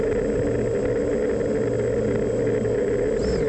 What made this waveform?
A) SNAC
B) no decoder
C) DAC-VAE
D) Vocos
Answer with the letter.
B